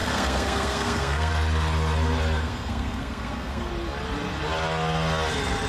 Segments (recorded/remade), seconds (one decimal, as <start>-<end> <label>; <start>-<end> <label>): 0.0-1.3 remade; 1.3-2.4 recorded; 2.4-3.7 remade; 3.7-5.7 recorded